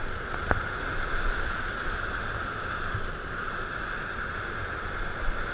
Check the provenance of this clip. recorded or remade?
recorded